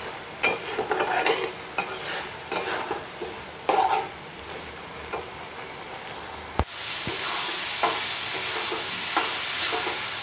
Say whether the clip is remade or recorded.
recorded